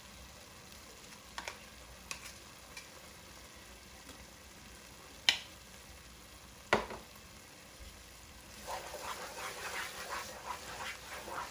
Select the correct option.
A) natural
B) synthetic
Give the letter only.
A